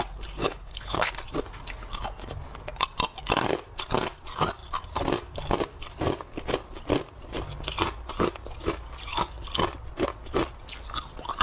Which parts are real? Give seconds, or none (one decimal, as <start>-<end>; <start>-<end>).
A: 0.0-0.4; 1.1-11.4